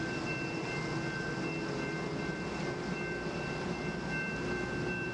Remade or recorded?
recorded